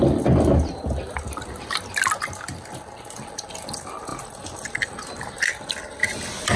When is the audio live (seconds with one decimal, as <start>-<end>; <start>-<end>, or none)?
0.0-6.6